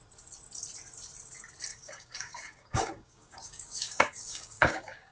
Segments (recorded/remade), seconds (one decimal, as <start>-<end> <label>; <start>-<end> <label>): 0.0-1.7 recorded; 1.7-5.1 remade